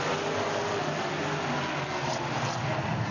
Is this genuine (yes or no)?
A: yes